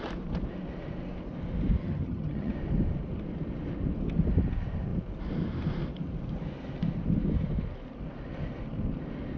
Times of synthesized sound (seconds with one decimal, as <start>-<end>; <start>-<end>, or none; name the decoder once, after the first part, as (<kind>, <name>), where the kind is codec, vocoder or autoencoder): 1.8-2.5 (vocoder, HiFi-GAN)

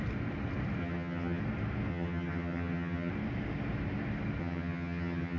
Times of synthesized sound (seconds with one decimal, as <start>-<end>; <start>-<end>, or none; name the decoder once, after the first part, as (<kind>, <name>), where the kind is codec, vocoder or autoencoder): 0.8-1.4 (vocoder, HiFi-GAN); 1.9-3.1; 4.4-5.4

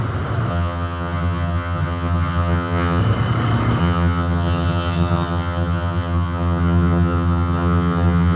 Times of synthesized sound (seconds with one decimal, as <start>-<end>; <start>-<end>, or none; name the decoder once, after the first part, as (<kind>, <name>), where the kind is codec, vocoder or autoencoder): 0.5-3.0 (vocoder, HiFi-GAN); 3.8-8.4

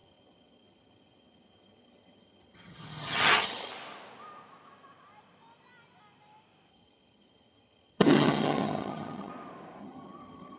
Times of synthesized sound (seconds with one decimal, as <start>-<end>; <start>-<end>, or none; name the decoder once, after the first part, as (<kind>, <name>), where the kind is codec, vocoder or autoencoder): 0.0-3.7 (vocoder, HiFi-GAN); 6.7-9.3; 9.8-10.6